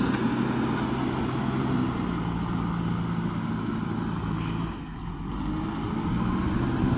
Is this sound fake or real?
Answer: real